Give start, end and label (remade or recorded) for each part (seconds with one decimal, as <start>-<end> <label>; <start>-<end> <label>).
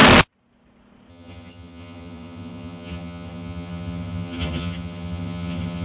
0.0-1.1 recorded; 1.1-5.8 remade